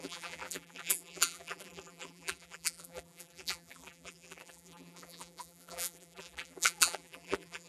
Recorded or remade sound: remade